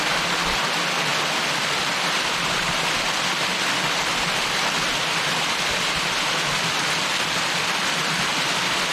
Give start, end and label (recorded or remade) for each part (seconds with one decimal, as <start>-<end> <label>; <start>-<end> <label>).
0.0-8.9 recorded